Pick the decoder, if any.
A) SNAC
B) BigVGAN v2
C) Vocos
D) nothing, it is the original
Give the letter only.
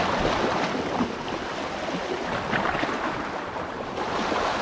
D